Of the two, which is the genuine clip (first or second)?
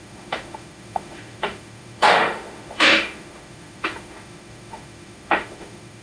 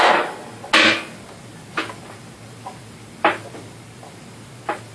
second